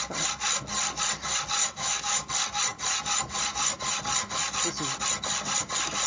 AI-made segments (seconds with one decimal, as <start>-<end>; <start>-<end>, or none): 1.6-2.3